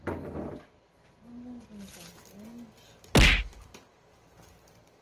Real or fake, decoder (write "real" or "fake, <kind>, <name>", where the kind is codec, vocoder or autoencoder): real